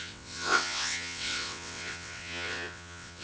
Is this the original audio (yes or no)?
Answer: no